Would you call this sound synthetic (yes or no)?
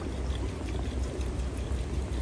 no